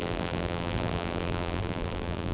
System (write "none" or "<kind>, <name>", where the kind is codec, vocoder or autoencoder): vocoder, BigVGAN v2